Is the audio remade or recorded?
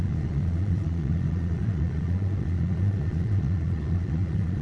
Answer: remade